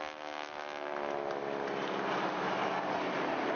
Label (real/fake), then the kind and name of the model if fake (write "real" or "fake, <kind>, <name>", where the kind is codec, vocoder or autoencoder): real